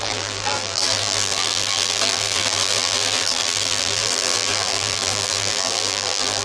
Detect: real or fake fake